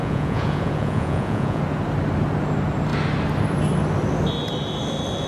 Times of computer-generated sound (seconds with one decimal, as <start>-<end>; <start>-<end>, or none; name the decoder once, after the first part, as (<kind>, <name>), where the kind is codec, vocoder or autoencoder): 0.0-1.6 (vocoder, Vocos)